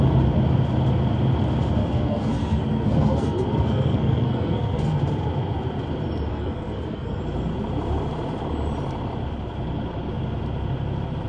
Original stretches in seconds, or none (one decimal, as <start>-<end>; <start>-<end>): 0.0-1.8; 5.0-6.3; 7.2-11.3